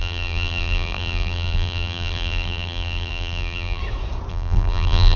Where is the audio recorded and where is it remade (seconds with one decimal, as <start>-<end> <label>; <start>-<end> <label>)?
0.0-3.8 remade; 3.8-4.3 recorded; 4.3-5.2 remade